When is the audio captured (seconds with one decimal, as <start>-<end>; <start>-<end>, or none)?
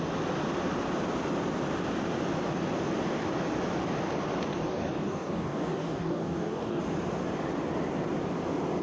0.0-4.6; 6.8-8.8